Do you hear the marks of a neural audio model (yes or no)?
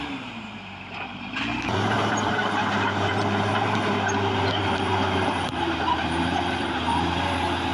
yes